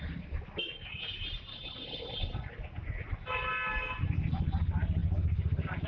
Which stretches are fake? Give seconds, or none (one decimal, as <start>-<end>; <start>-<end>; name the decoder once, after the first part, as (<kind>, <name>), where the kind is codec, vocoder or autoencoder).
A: 1.5-2.5 (codec, HILCodec)